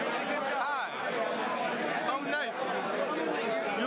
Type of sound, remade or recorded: recorded